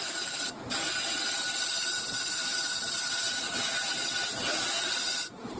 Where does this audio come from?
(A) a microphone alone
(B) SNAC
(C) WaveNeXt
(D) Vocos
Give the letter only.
A